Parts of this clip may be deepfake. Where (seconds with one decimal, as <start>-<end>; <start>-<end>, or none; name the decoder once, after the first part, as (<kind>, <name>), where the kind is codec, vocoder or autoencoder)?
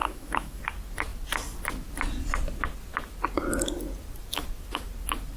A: 0.0-0.6 (autoencoder, DAC-VAE)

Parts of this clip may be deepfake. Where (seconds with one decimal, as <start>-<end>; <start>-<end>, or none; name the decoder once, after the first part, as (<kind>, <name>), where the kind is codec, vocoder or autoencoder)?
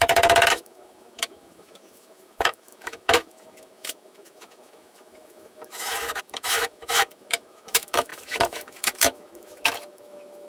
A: 0.0-10.5 (autoencoder, DAC-VAE)